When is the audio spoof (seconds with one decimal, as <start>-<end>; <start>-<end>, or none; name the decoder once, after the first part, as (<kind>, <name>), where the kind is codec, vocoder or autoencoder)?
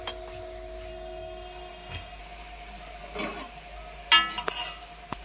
0.9-2.2 (codec, DAC)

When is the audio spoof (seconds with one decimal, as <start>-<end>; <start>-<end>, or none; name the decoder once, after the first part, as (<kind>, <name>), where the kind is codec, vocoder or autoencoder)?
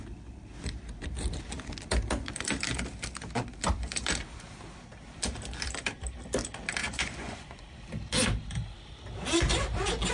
6.8-7.6 (vocoder, Vocos)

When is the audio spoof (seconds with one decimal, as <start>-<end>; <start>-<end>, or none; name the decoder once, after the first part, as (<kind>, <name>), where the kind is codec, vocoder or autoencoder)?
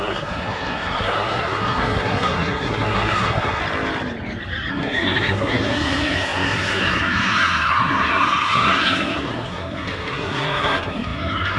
0.0-3.6 (codec, SNAC); 4.7-11.6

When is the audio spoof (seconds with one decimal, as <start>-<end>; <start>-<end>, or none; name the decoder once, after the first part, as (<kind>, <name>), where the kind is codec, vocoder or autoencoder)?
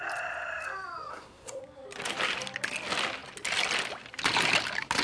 1.1-1.6 (codec, SNAC)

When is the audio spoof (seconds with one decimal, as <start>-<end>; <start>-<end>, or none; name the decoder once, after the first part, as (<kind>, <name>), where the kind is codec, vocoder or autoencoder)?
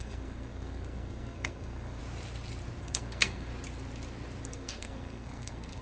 0.0-2.0 (codec, SNAC); 2.8-3.5; 4.4-5.8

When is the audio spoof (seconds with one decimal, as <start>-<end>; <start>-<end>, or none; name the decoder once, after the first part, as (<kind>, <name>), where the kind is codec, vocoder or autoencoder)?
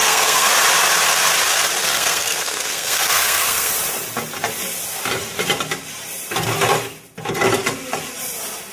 0.0-0.5 (codec, SNAC); 1.8-3.7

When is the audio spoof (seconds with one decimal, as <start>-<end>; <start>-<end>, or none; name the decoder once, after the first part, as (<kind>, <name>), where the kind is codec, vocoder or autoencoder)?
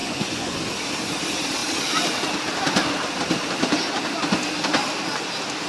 0.0-0.6 (vocoder, Vocos)